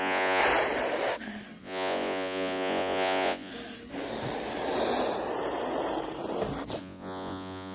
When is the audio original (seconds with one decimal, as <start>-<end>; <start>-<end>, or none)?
0.4-1.6; 3.5-6.8